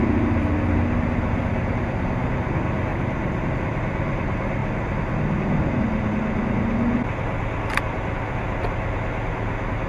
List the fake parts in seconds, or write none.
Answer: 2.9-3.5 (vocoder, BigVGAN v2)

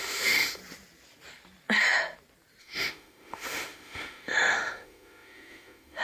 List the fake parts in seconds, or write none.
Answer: 0.0-0.6 (autoencoder, DAC-VAE); 2.6-6.0

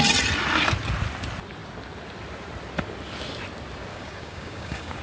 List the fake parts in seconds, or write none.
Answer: 3.9-5.0 (codec, DAC)